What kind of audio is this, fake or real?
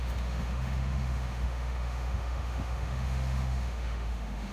fake